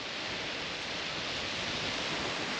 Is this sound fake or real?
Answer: real